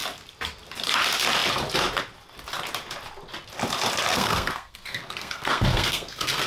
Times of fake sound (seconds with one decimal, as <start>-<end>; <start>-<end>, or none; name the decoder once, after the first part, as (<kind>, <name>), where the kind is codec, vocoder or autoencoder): 4.1-6.5 (codec, SNAC)